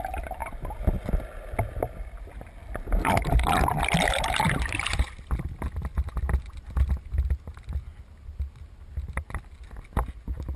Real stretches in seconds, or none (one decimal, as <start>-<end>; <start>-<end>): 0.0-10.6